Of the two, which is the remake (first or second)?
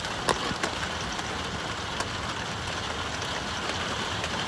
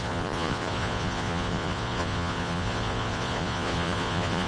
second